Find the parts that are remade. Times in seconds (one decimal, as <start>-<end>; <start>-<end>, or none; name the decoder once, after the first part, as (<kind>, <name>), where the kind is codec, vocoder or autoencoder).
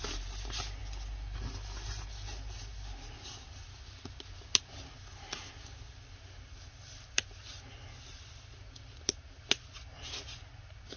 none